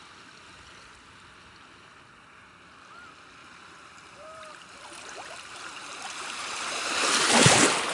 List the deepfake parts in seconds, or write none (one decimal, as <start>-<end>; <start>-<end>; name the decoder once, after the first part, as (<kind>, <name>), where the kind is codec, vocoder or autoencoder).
3.4-7.1 (vocoder, BigVGAN v2)